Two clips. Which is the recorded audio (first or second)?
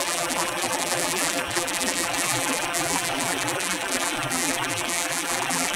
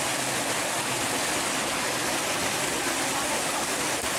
second